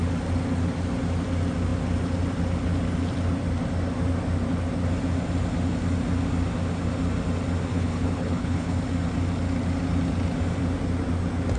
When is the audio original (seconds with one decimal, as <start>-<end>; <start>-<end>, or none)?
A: 0.0-7.7; 8.8-11.6